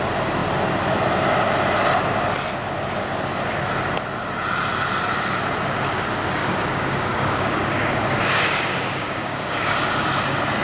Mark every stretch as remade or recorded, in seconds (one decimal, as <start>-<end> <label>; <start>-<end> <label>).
0.0-6.4 recorded; 6.4-10.1 remade; 10.1-10.6 recorded